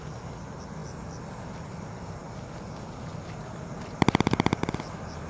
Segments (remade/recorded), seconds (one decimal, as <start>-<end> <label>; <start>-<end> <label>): 0.0-5.3 recorded